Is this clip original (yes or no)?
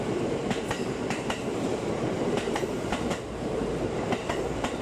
no